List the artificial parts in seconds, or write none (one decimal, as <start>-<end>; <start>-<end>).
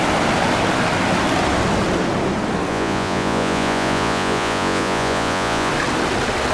2.7-5.7